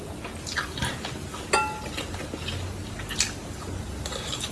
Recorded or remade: recorded